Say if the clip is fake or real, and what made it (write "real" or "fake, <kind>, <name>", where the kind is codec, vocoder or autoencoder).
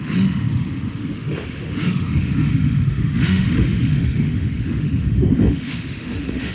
fake, autoencoder, DAC-VAE